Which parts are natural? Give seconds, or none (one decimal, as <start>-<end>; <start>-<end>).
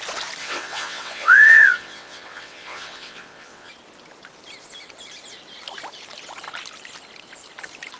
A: 0.0-0.4; 3.7-8.0